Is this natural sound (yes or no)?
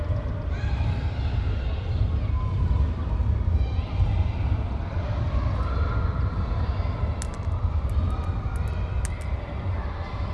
yes